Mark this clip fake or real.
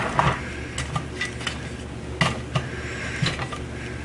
real